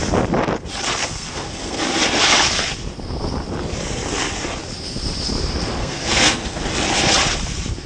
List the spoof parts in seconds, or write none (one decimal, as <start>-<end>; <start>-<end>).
1.0-1.8; 5.8-6.6